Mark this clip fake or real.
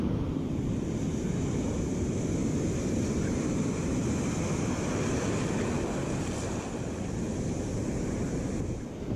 real